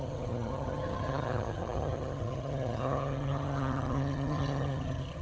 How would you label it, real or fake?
fake